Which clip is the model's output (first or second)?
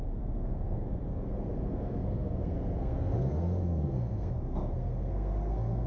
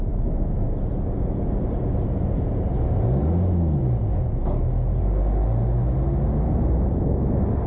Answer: first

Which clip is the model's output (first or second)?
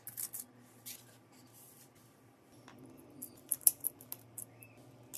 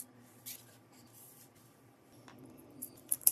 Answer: second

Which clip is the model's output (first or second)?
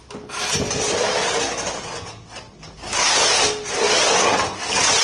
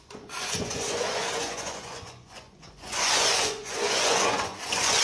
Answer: second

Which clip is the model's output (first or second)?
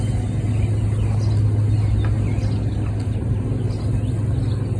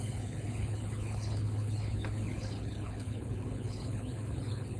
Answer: second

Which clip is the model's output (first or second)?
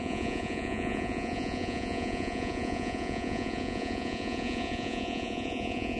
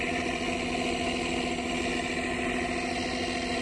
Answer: first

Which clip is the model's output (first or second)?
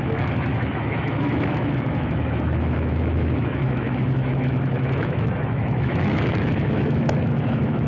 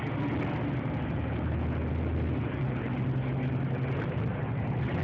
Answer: first